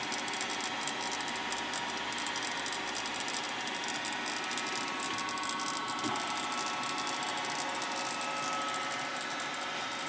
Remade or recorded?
recorded